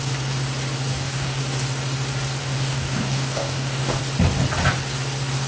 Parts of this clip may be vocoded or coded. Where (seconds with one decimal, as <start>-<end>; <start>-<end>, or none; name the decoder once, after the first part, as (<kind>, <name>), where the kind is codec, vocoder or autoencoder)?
0.9-1.4 (codec, DAC); 2.4-4.0